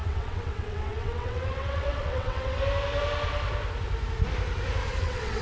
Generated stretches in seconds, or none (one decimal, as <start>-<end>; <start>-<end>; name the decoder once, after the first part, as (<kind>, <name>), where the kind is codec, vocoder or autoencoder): 0.0-2.6 (vocoder, WaveNeXt); 5.0-5.4

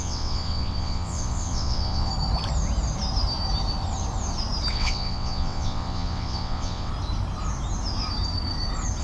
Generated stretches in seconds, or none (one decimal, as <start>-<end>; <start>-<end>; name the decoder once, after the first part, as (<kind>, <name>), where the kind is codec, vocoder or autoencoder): 0.0-2.1 (vocoder, WaveNeXt); 4.7-6.9

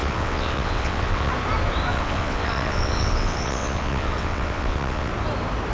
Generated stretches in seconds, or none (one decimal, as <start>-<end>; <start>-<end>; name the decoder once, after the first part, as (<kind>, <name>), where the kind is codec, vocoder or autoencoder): 0.0-1.3 (vocoder, WaveNeXt); 1.9-5.1